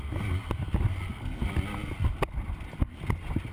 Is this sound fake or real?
real